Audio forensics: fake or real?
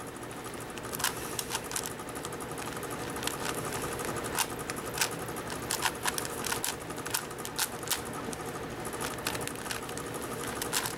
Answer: real